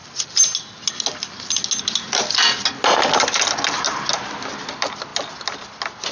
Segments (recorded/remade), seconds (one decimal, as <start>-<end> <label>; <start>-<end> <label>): 0.0-6.1 recorded